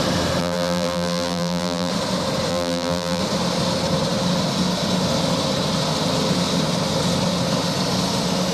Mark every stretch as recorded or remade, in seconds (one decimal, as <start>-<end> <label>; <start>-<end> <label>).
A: 0.0-0.4 recorded; 0.4-1.9 remade; 1.9-2.5 recorded; 2.5-3.2 remade; 3.2-8.5 recorded